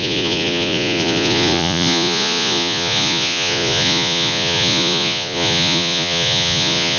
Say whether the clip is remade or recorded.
remade